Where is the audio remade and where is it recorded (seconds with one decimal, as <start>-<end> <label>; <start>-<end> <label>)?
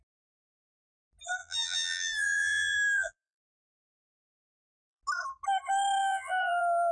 0.0-1.4 recorded; 1.4-5.0 remade; 5.0-6.0 recorded; 6.0-6.9 remade